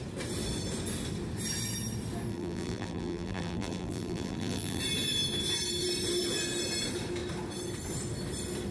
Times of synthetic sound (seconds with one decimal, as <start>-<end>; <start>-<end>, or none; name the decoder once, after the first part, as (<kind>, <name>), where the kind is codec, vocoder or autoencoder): 2.3-4.8 (vocoder, BigVGAN v2)